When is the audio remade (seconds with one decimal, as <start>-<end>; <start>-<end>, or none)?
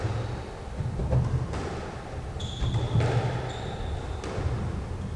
none